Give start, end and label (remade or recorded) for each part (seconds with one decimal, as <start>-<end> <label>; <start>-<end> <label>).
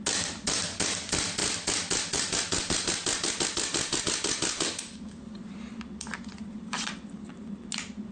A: 0.0-8.1 recorded